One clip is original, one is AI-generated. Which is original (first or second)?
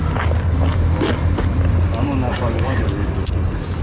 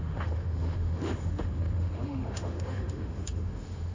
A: first